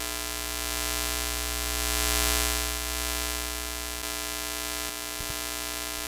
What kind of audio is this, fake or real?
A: real